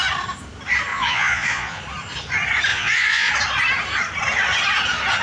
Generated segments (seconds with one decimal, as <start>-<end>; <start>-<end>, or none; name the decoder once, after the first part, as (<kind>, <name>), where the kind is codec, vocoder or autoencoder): 0.9-1.8 (vocoder, Vocos); 2.7-3.3